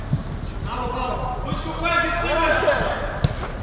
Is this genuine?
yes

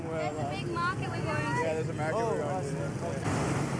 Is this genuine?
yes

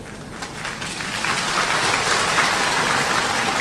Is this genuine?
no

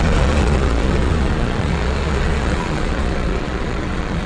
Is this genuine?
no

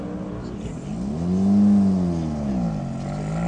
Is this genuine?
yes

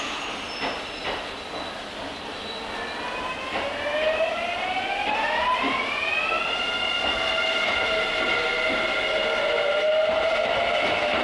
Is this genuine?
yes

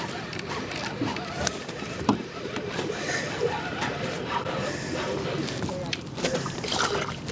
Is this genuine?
no